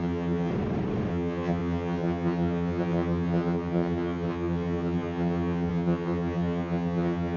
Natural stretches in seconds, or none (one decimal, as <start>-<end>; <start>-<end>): 0.5-1.1

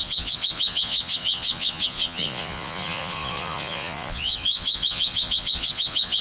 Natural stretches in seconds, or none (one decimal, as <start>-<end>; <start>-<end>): none

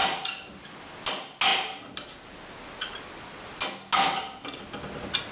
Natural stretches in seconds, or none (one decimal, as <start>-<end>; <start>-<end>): 0.0-5.3

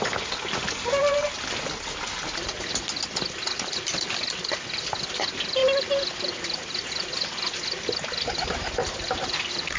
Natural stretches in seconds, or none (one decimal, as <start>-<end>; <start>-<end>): 0.0-9.8

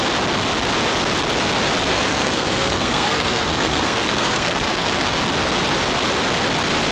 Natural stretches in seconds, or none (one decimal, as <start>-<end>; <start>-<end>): 0.0-1.9; 5.2-6.9

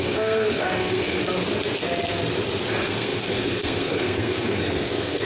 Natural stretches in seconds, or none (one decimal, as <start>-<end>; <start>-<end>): 1.2-2.7

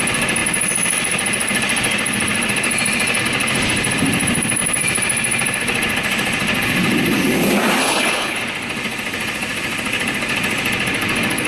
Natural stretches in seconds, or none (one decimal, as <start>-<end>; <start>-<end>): 0.0-7.8; 8.4-11.5